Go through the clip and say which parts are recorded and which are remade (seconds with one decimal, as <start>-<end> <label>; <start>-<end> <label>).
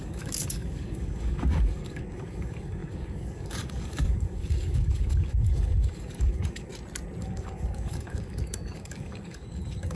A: 0.0-6.7 remade; 6.7-7.2 recorded; 7.2-10.0 remade